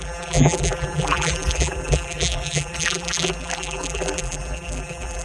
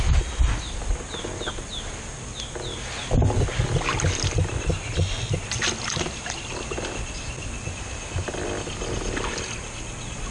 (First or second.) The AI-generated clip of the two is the first